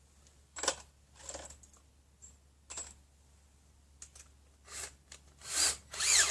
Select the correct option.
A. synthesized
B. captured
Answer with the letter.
B